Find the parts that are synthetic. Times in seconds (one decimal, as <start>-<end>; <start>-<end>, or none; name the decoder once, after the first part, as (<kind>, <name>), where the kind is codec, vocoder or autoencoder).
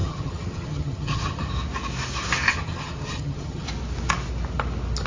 0.0-1.5 (vocoder, HiFi-GAN); 2.5-3.7